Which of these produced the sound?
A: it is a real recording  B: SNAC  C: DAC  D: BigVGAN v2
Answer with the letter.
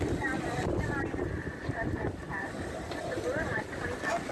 A